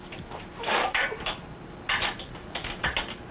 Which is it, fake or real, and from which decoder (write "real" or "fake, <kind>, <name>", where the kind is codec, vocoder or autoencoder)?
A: real